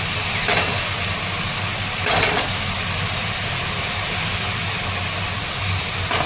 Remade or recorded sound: recorded